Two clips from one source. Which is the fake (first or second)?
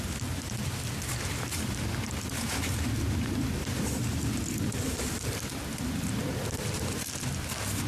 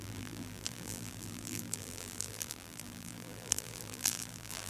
second